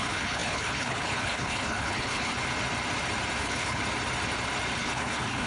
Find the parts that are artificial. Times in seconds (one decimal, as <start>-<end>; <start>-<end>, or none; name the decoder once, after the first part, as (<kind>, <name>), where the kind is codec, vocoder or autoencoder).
0.0-2.3 (codec, HILCodec); 3.4-3.8; 4.8-5.5